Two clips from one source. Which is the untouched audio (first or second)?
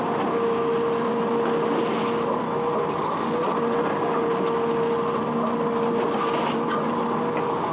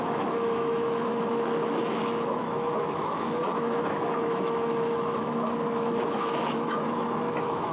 first